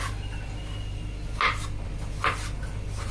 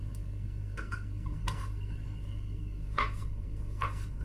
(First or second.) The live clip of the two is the first